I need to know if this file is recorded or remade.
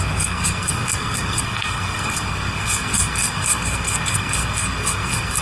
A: remade